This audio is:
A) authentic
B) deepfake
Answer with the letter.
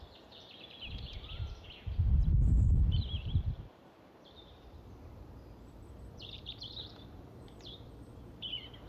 B